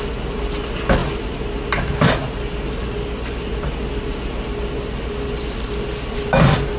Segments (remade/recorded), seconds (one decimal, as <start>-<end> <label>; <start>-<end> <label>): 0.0-6.8 recorded